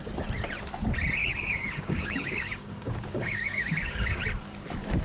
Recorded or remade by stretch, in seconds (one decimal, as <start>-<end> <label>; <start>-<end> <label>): 0.0-1.2 recorded; 1.2-4.2 remade; 4.2-5.0 recorded